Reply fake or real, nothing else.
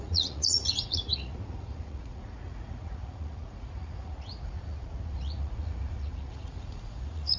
fake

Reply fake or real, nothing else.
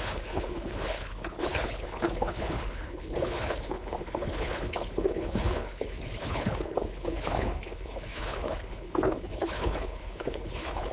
fake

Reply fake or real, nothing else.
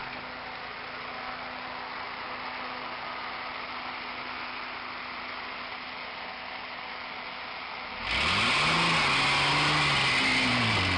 real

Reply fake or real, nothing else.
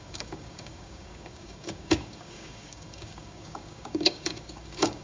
fake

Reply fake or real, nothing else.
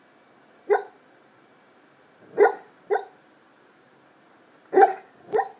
real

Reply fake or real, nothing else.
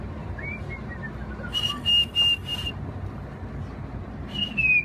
real